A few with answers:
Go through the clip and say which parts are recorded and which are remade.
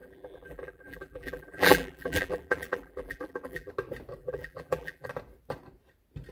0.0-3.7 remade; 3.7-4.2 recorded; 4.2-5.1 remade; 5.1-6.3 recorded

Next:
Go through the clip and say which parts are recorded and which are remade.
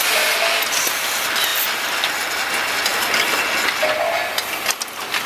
0.0-5.3 recorded